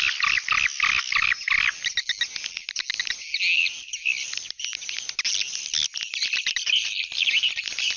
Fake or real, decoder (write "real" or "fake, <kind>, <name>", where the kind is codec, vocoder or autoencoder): real